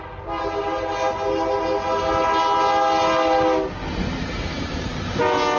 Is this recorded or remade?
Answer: recorded